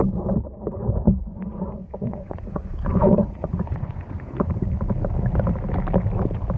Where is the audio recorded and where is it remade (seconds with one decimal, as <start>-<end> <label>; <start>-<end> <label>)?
0.0-0.5 recorded; 0.5-4.5 remade; 4.5-6.6 recorded